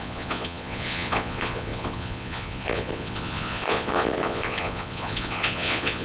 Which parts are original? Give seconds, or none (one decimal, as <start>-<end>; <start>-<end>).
none